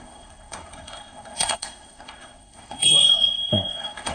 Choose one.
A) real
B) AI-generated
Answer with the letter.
B